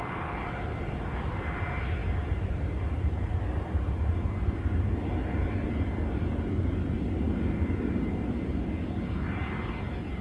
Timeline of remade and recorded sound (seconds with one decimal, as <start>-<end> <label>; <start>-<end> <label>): 0.0-10.2 recorded